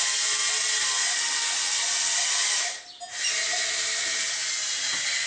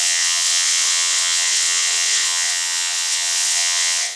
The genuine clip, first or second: first